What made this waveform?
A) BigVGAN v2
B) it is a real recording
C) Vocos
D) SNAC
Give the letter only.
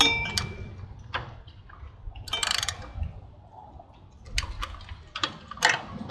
A